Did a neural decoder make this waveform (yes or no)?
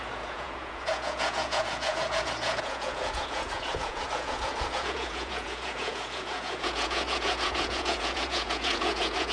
yes